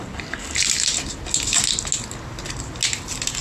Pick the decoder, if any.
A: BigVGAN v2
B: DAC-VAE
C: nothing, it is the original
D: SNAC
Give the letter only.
C